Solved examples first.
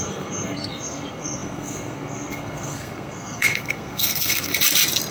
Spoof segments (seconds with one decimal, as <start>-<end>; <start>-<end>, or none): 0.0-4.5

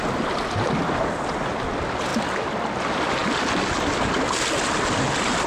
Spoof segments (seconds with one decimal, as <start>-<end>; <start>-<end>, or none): none

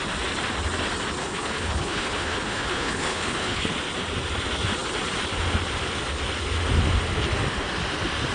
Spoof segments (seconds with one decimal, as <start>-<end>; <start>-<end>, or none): 1.2-3.7

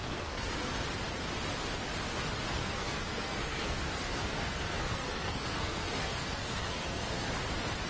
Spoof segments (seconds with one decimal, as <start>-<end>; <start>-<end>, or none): 0.0-0.7; 2.6-7.3

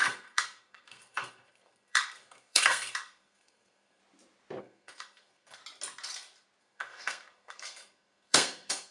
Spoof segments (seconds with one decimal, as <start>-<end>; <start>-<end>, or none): 0.0-4.0; 4.6-5.6; 6.6-8.9

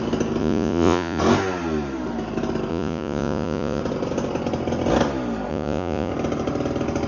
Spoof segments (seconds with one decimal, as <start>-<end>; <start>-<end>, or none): 0.4-1.2; 2.7-3.8; 5.5-6.1

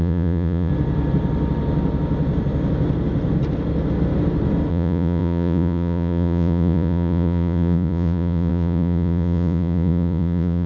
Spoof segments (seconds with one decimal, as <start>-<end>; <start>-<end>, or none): 0.0-0.7; 4.7-10.7